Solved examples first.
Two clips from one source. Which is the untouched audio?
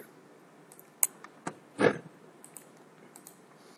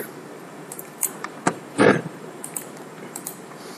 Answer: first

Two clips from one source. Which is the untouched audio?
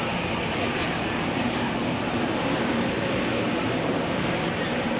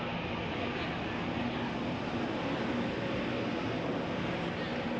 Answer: second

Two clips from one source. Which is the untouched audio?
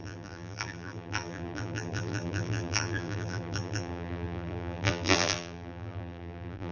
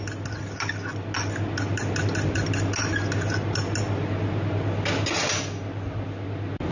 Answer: second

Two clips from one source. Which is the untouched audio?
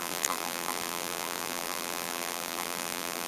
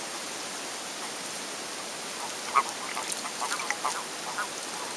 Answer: second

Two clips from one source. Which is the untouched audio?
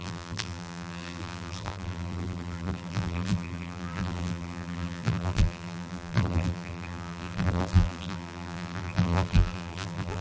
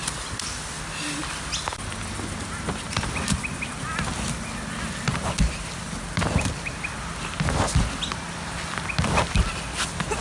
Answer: second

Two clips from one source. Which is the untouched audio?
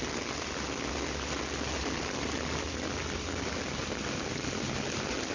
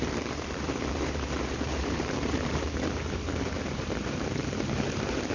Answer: first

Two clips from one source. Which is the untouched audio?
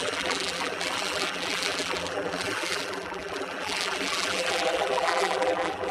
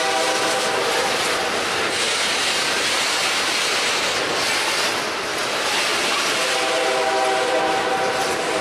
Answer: second